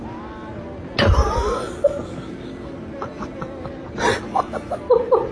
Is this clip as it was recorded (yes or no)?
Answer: yes